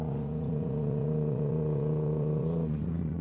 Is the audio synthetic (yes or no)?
yes